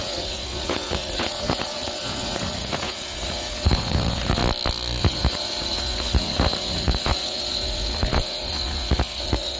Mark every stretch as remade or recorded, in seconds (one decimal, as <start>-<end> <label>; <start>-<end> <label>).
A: 0.0-4.4 remade; 4.4-5.0 recorded; 5.0-9.6 remade

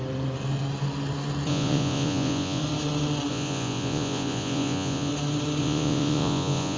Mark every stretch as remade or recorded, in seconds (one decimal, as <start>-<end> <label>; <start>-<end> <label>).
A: 0.0-1.5 recorded; 1.5-2.6 remade; 2.6-3.3 recorded; 3.3-5.1 remade; 5.1-5.6 recorded; 5.6-6.8 remade

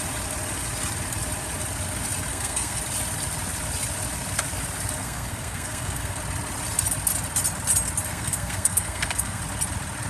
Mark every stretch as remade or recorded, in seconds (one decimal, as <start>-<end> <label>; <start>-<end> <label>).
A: 0.0-2.3 recorded; 2.3-2.8 remade; 2.8-5.0 recorded; 5.0-6.2 remade; 6.2-8.1 recorded; 8.1-9.4 remade; 9.4-10.1 recorded